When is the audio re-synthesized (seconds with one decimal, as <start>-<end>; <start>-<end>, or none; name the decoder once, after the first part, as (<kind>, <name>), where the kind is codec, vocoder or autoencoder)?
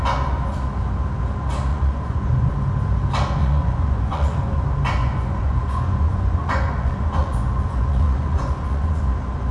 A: 1.7-2.5 (vocoder, Vocos); 3.4-4.6; 5.0-9.0